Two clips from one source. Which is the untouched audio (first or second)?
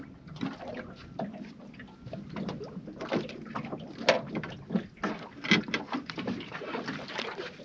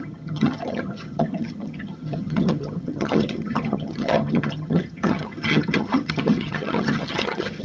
first